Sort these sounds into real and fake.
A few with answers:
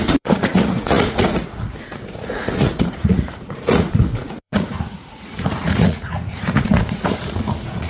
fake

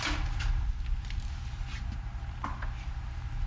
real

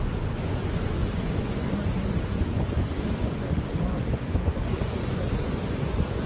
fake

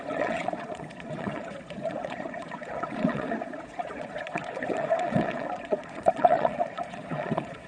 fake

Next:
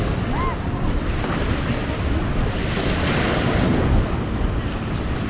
real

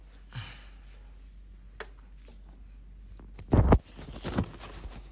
real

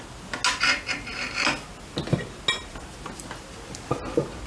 real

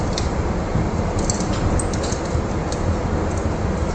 real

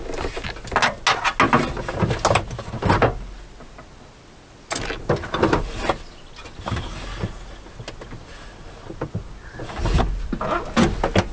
real